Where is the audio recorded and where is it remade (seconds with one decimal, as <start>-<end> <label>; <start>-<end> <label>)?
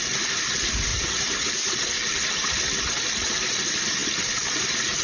0.0-0.9 recorded; 0.9-1.6 remade; 1.6-5.0 recorded